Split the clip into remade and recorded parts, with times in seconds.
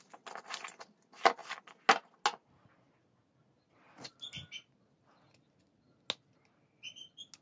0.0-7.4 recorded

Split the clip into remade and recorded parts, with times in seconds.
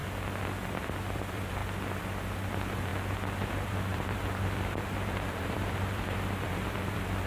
0.0-0.7 recorded; 0.7-1.6 remade; 1.6-2.5 recorded; 2.5-2.9 remade; 2.9-3.4 recorded; 3.4-7.3 remade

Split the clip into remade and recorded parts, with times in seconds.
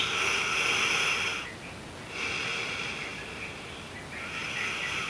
0.0-1.3 recorded; 1.3-2.1 remade; 2.1-3.1 recorded; 3.1-4.0 remade; 4.0-4.4 recorded; 4.4-5.1 remade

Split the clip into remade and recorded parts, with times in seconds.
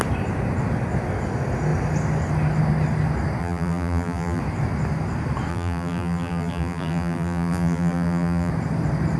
0.0-3.4 recorded; 3.4-4.4 remade; 4.4-5.5 recorded; 5.5-8.5 remade; 8.5-9.2 recorded